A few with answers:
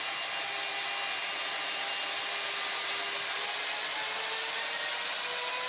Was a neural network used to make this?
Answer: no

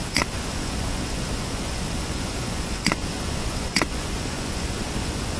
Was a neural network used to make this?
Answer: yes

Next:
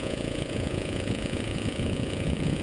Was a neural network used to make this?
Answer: yes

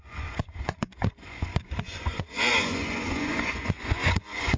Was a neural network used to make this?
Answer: yes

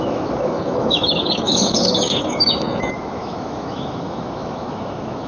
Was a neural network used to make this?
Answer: yes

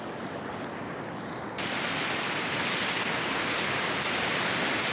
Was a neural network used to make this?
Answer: no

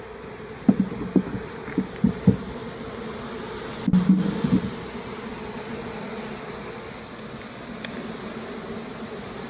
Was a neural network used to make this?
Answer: no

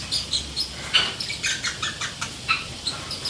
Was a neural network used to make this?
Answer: no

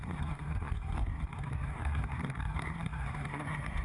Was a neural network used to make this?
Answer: yes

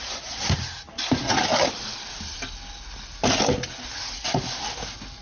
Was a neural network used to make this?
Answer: no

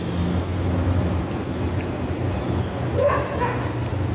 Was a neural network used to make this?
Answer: no